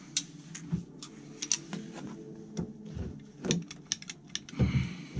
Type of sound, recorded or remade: recorded